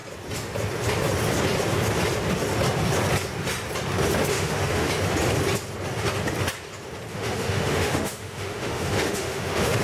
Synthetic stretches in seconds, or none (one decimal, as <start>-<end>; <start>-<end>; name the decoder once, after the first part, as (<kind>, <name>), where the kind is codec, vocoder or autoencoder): 4.3-4.9 (autoencoder, DAC-VAE); 7.1-9.8

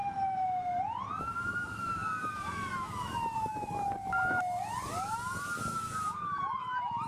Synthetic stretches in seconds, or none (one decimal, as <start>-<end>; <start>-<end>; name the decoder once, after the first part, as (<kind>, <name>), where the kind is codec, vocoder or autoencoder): 1.2-7.1 (autoencoder, DAC-VAE)

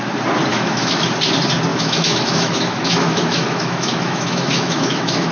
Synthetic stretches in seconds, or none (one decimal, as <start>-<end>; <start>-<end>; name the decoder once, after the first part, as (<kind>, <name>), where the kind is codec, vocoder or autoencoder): 0.5-1.1 (autoencoder, DAC-VAE); 1.7-5.3

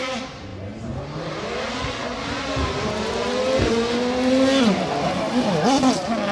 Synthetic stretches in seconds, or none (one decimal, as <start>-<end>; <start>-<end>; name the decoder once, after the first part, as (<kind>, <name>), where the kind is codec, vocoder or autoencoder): none